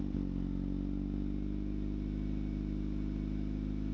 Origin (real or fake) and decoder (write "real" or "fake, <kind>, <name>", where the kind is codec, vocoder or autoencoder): real